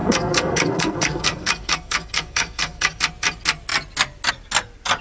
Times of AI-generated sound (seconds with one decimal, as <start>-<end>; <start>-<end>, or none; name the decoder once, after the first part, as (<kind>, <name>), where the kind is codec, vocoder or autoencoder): 0.0-3.0 (codec, SNAC)